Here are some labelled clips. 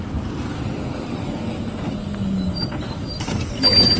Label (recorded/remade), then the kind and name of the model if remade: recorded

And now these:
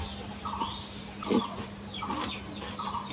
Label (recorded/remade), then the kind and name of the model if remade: recorded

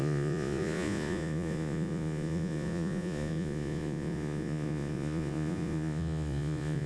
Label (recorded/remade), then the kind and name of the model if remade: remade, vocoder, Vocos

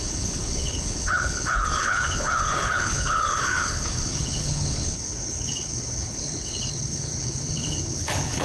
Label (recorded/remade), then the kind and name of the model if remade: remade, codec, HILCodec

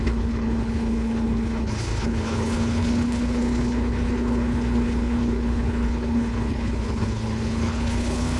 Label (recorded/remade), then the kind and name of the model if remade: remade, codec, HILCodec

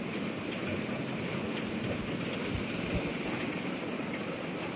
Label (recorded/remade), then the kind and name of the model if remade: recorded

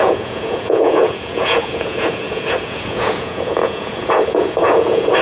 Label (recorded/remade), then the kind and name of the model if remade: remade, vocoder, Vocos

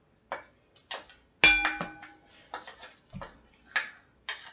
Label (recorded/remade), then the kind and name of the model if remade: recorded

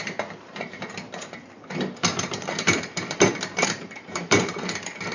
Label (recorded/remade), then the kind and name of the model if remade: remade, vocoder, BigVGAN v2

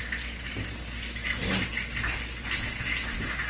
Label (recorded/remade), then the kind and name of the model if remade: recorded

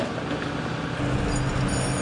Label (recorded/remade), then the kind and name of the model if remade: recorded